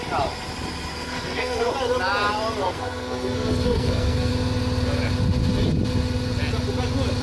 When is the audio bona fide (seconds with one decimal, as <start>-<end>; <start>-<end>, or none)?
0.0-0.9; 1.7-2.6; 4.3-7.2